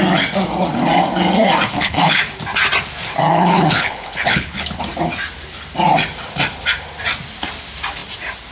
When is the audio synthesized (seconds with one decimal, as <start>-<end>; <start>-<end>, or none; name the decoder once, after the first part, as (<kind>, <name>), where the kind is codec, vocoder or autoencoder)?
1.7-2.2 (codec, HILCodec); 3.3-4.8